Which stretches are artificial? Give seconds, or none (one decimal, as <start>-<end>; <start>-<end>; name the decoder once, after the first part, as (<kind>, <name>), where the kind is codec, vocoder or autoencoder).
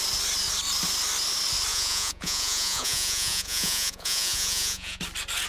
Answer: 1.7-5.0 (vocoder, Vocos)